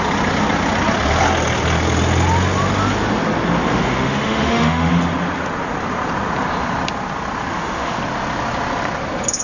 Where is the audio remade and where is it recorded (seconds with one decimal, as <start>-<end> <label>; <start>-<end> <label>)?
0.0-3.7 recorded; 3.7-4.9 remade; 4.9-7.5 recorded; 7.5-8.0 remade; 8.0-9.4 recorded